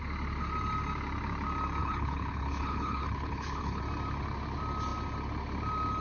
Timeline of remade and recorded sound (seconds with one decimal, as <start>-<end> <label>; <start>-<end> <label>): 0.0-1.8 recorded; 1.8-3.8 remade; 3.8-6.0 recorded